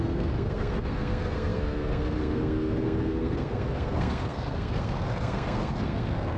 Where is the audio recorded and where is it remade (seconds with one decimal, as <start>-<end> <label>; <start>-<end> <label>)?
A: 0.0-6.4 remade